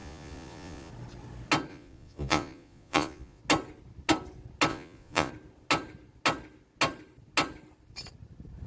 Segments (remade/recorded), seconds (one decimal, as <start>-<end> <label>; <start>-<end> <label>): 0.0-0.9 remade; 0.9-1.7 recorded; 1.7-3.4 remade; 3.4-4.7 recorded; 4.7-5.3 remade; 5.3-8.7 recorded